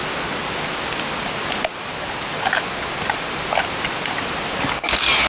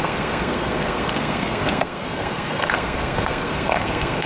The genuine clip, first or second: first